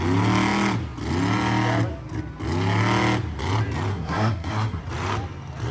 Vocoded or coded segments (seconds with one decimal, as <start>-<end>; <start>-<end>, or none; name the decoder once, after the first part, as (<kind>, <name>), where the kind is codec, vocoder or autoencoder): 3.9-4.8 (codec, SNAC)